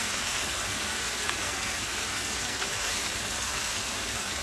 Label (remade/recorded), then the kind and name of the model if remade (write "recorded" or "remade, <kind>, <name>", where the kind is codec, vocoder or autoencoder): remade, codec, SNAC